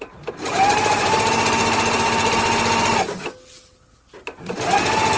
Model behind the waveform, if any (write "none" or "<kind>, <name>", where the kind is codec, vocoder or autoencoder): none